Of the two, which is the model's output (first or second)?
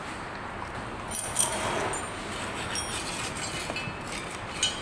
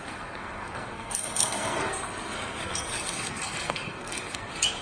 second